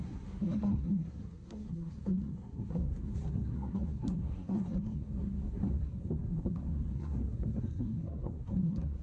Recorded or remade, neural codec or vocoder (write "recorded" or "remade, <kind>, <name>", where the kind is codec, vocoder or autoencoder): remade, codec, SNAC